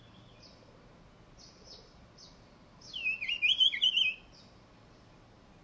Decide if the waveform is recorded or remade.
recorded